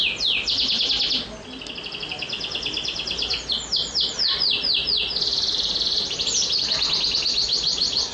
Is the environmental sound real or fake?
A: real